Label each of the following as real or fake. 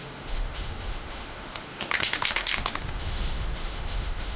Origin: fake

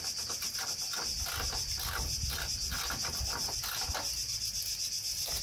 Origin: real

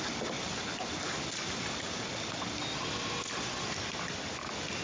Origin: real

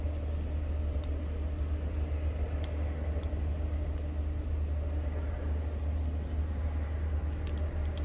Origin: real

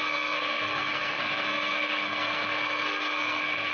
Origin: fake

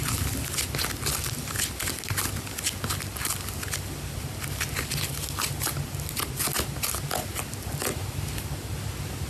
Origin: real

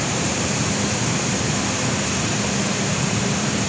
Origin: fake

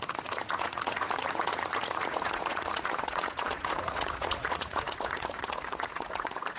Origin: fake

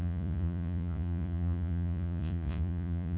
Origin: fake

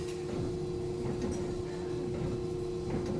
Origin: real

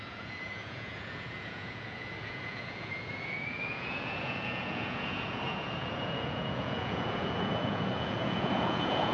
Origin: fake